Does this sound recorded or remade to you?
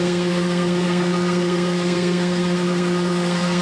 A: remade